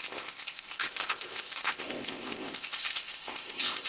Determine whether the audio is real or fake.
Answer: fake